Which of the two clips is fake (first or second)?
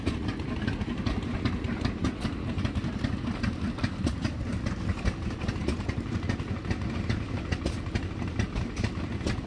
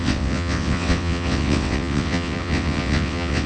second